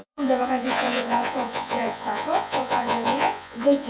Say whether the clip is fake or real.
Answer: fake